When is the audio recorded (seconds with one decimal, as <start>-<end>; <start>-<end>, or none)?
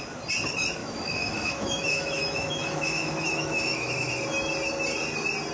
0.0-0.8; 4.1-5.5